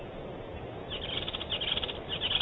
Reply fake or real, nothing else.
real